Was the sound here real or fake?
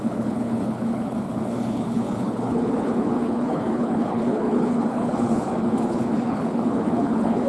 fake